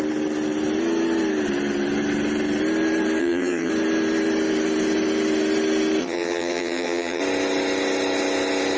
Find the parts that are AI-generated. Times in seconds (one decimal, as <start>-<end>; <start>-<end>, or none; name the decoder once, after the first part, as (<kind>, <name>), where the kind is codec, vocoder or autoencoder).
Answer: 3.2-3.7 (vocoder, HiFi-GAN); 6.0-7.2